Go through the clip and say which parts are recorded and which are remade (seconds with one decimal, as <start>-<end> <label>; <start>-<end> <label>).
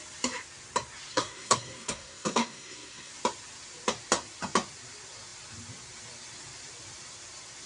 0.0-1.1 recorded; 1.1-3.1 remade; 3.1-7.7 recorded